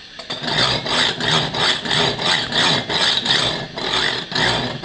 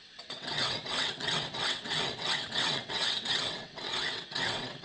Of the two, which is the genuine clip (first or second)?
first